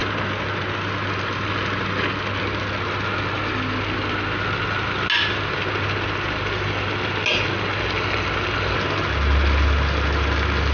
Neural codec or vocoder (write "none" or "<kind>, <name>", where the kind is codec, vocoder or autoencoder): none